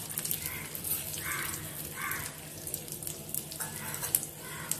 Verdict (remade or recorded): remade